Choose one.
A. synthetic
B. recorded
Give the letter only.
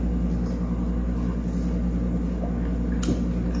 B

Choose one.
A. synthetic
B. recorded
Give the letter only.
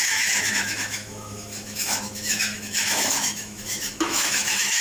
A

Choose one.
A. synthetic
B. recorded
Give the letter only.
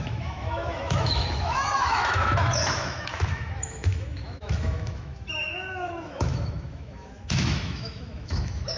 A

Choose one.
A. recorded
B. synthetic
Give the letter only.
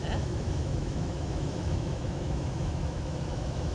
B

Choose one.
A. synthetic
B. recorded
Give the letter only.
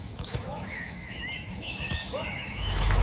A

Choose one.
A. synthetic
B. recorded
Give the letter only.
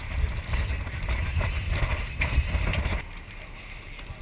B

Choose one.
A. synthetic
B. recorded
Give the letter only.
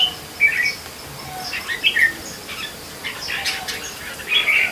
B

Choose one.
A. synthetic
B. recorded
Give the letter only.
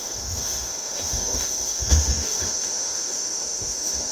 A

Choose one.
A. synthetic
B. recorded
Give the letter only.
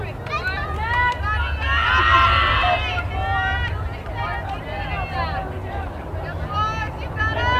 B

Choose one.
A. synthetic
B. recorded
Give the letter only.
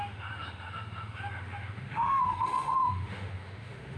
A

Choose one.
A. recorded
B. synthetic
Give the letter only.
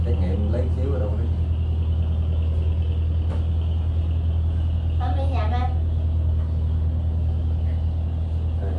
A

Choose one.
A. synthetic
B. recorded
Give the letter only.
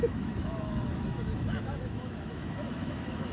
A